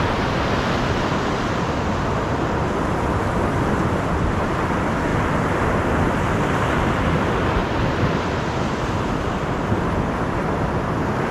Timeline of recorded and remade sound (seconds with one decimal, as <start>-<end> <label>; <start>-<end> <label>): 0.0-3.2 recorded; 3.2-3.8 remade; 3.8-5.1 recorded; 5.1-6.7 remade; 6.7-7.6 recorded; 7.6-8.8 remade; 8.8-11.3 recorded